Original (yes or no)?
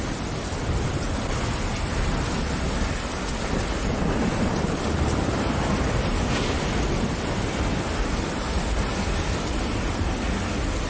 yes